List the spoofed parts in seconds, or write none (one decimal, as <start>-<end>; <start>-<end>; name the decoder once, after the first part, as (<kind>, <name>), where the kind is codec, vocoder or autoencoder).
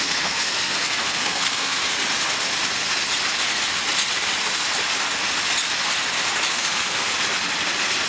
0.0-1.8 (codec, SNAC); 6.5-7.1